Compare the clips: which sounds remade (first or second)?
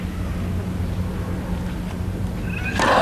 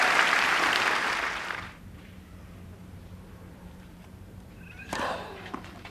second